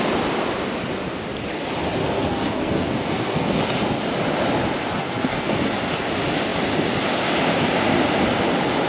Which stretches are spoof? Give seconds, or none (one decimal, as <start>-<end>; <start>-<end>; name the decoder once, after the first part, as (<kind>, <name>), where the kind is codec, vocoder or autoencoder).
2.0-3.6 (codec, SNAC); 5.0-5.7